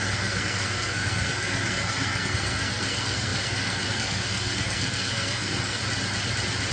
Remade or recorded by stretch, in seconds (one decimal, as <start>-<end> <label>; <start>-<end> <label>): 0.0-5.8 remade; 5.8-6.7 recorded

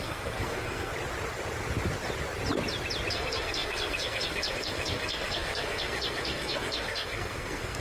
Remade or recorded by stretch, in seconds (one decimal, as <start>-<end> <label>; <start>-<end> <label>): 0.0-0.9 remade; 0.9-3.1 recorded; 3.1-7.8 remade

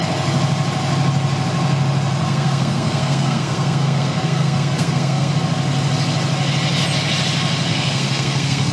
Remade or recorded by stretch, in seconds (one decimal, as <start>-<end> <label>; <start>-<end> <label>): 0.0-2.1 recorded; 2.1-5.3 remade; 5.3-7.7 recorded; 7.7-8.7 remade

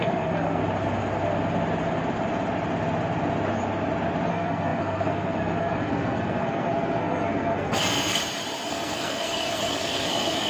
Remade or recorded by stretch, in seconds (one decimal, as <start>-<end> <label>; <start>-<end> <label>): 0.0-0.6 remade; 0.6-4.3 recorded; 4.3-8.2 remade; 8.2-8.7 recorded; 8.7-10.5 remade

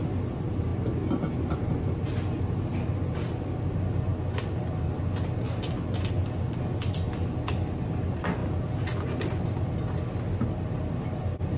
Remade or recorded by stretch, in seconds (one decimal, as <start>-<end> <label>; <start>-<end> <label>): 0.0-11.6 recorded